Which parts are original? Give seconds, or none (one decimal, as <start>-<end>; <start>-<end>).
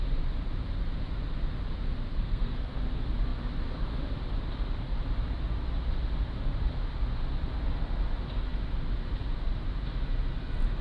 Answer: 0.0-2.1; 2.7-10.8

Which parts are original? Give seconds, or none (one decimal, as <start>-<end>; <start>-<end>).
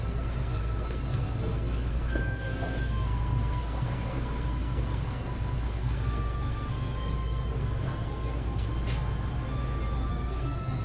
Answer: 8.7-10.1